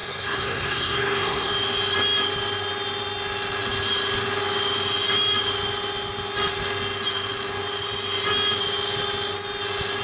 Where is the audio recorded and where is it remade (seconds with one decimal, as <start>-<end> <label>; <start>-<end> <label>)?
0.0-1.5 remade; 1.5-10.0 recorded